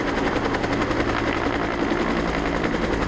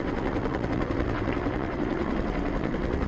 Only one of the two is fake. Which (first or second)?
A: second